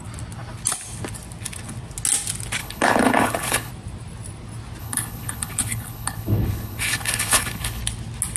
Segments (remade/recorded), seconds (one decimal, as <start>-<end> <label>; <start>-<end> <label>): 0.0-2.6 recorded; 2.6-3.7 remade; 3.7-4.8 recorded; 4.8-7.8 remade; 7.8-8.4 recorded